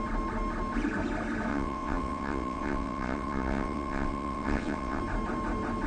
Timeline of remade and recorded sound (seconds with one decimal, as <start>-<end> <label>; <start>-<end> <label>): 0.0-1.5 recorded; 1.5-5.0 remade; 5.0-5.9 recorded